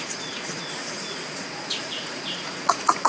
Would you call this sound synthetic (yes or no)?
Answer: yes